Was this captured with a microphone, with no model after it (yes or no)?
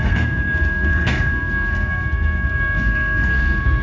no